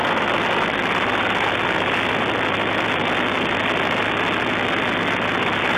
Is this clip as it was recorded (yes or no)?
yes